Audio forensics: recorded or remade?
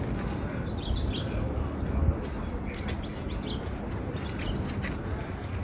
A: recorded